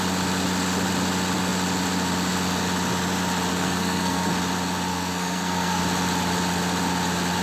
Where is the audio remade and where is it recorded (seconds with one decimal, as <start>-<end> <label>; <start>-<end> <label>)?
0.0-3.5 recorded; 3.5-4.3 remade; 4.3-4.9 recorded; 4.9-5.8 remade; 5.8-7.4 recorded

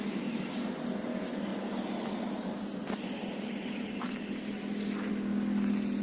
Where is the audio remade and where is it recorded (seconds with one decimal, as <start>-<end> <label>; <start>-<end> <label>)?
0.0-6.0 recorded